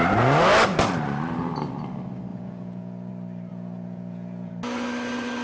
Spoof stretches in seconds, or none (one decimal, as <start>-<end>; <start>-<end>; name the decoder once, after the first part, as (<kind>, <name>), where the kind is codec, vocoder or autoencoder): 2.3-3.1 (vocoder, Vocos); 3.5-4.5

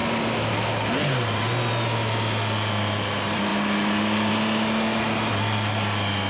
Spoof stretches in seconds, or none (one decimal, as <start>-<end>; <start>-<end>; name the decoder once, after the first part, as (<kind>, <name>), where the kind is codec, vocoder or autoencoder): none

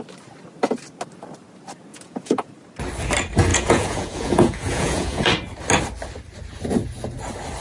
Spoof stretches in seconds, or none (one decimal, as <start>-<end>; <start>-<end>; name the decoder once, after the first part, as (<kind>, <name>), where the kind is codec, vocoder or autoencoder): 1.9-2.5 (vocoder, Vocos); 3.5-5.3

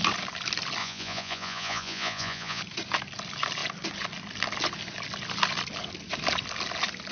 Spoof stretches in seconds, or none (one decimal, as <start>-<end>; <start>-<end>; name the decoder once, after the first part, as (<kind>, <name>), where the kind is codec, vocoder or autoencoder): 0.8-2.6 (vocoder, Vocos)

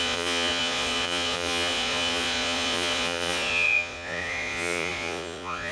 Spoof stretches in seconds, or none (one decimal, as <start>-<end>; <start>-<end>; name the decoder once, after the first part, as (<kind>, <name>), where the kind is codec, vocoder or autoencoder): 0.0-5.7 (vocoder, Vocos)

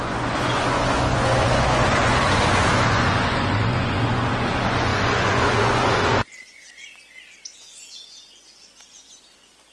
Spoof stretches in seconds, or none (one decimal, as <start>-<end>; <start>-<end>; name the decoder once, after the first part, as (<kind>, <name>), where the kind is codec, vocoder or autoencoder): 0.0-9.7 (vocoder, Vocos)

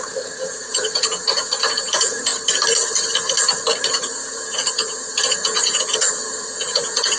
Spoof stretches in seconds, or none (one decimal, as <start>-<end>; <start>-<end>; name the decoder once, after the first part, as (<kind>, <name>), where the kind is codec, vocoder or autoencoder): 0.0-2.3 (vocoder, Vocos); 3.9-7.2

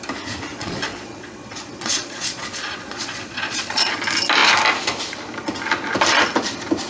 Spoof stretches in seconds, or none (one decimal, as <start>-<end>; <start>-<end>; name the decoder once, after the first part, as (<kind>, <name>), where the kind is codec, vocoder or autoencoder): 0.5-4.0 (vocoder, Vocos)